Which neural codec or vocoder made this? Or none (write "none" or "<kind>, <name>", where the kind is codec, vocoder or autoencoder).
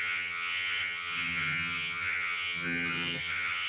vocoder, HiFi-GAN